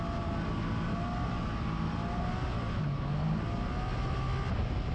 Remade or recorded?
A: recorded